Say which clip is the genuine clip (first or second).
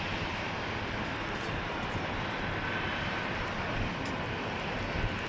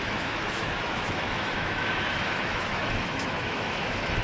first